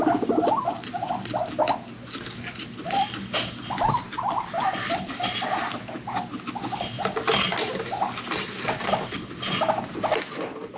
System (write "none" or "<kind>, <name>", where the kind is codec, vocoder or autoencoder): none